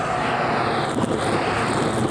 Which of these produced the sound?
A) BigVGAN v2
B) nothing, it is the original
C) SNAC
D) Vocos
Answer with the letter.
B